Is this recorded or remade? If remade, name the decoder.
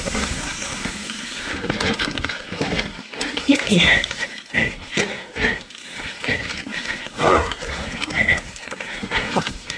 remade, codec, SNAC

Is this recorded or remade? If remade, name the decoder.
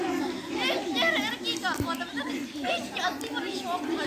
recorded